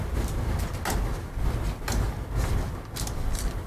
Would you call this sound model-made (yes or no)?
no